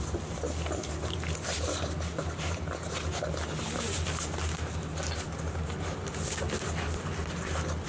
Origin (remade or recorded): recorded